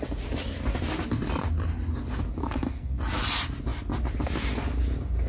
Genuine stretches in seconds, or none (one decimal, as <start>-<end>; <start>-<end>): 0.0-2.4; 3.0-5.3